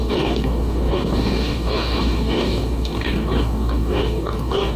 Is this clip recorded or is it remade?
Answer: remade